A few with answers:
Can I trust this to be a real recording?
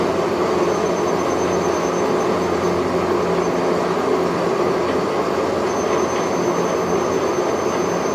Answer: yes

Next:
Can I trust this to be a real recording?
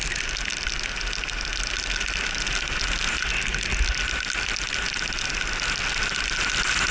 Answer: yes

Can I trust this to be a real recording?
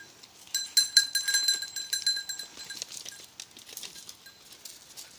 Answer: yes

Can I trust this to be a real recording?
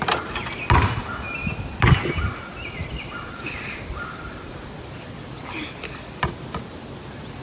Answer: yes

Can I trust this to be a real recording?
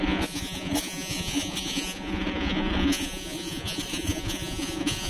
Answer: no